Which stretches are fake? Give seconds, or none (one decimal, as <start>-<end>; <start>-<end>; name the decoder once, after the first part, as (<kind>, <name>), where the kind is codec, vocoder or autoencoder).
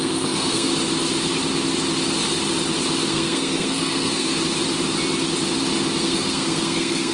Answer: 0.0-0.7 (codec, SNAC); 3.1-4.3; 6.0-7.1